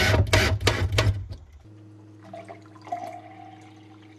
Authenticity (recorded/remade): recorded